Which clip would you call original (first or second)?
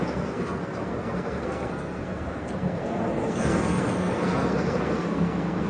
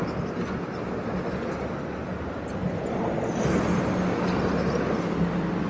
second